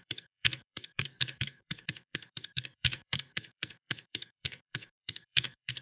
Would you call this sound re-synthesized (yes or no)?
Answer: yes